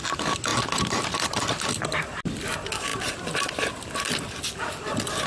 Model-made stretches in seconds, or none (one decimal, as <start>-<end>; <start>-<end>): none